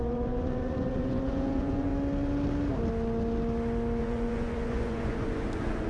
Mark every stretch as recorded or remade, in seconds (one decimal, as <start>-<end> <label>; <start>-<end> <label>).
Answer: 0.0-1.9 remade; 1.9-4.0 recorded; 4.0-5.9 remade